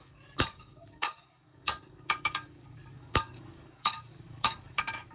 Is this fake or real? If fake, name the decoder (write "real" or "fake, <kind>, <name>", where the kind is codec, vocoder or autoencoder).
fake, codec, DAC